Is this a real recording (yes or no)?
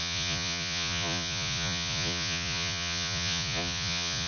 no